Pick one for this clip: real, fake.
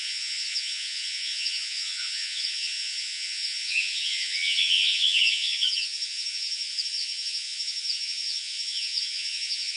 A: fake